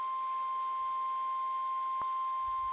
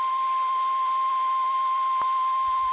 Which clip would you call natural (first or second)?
first